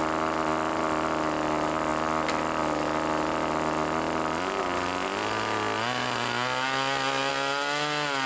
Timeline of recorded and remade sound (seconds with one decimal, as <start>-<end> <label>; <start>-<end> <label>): 0.0-8.3 recorded